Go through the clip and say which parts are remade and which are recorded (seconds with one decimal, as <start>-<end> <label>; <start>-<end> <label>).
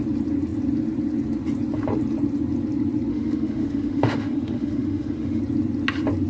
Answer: 0.0-3.1 recorded; 3.1-5.4 remade; 5.4-6.3 recorded